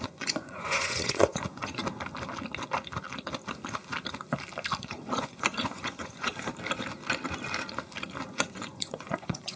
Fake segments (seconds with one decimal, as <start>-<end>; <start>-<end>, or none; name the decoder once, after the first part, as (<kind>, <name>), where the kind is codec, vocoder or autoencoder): 0.0-1.8 (vocoder, Vocos); 4.8-6.3; 8.3-9.6